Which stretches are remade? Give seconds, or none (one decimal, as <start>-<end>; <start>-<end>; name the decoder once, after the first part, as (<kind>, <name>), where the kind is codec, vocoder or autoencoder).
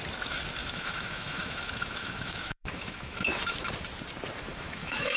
0.6-3.7 (autoencoder, DAC-VAE); 4.5-5.2